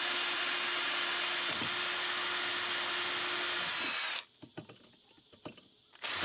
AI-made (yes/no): no